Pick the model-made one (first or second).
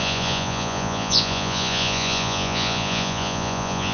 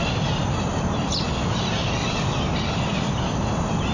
first